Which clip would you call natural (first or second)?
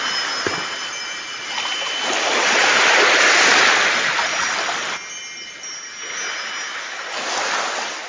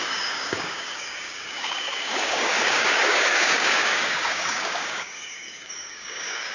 first